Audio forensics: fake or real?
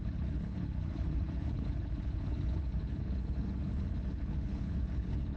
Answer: fake